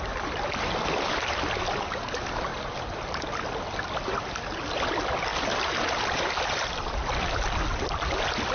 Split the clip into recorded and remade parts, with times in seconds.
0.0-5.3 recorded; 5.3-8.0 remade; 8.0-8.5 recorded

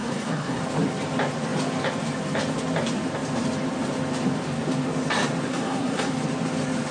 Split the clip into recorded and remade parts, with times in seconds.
0.0-0.6 remade; 0.6-5.5 recorded; 5.5-6.1 remade; 6.1-6.9 recorded